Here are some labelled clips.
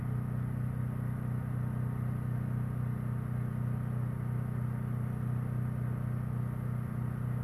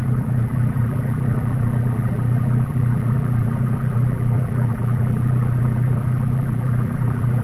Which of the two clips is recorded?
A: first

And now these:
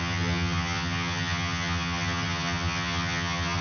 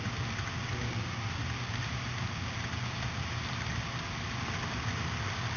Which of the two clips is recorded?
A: second